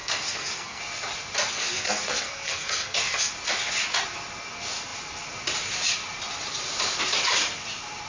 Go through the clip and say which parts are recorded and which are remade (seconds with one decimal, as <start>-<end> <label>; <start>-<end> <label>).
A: 0.0-0.8 remade; 0.8-1.5 recorded; 1.5-3.3 remade; 3.3-8.1 recorded